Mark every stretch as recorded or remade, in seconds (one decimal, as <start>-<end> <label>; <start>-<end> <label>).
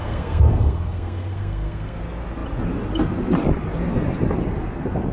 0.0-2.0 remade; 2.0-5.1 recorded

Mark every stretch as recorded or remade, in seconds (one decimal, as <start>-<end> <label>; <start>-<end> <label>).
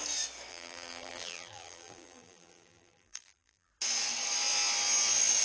0.0-0.5 recorded; 0.5-3.7 remade; 3.7-5.4 recorded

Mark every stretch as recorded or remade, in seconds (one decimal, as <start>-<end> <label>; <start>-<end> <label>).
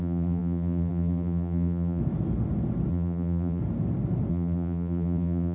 0.0-2.0 remade; 2.0-2.9 recorded; 2.9-3.6 remade; 3.6-4.3 recorded; 4.3-5.5 remade